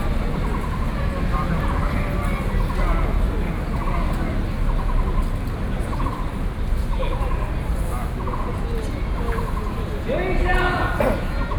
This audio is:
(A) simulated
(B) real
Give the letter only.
B